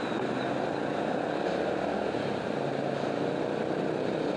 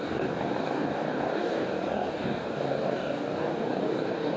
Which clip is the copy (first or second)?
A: second